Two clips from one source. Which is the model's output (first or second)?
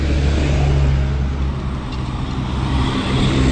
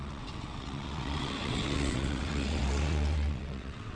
second